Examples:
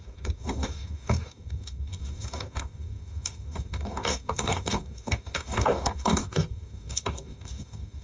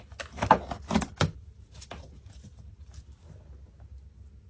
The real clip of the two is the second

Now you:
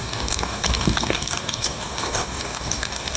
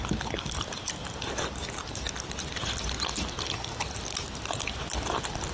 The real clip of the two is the second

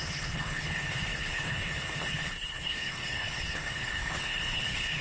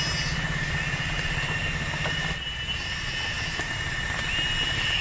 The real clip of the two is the second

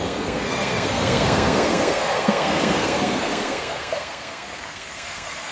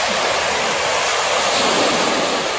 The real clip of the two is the second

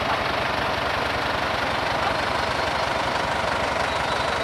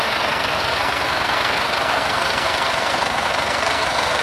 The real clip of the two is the first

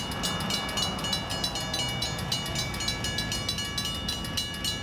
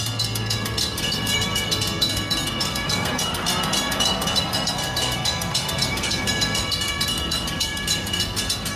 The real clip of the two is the first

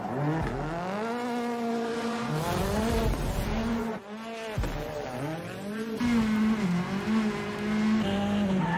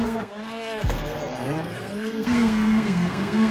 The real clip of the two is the first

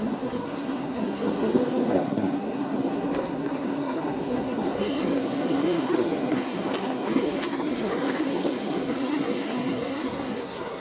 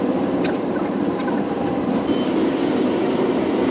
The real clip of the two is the second